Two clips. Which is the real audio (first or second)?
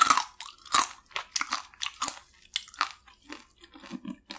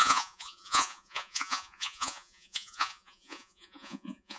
first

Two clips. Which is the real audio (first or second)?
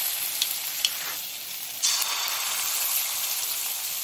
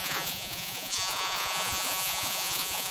first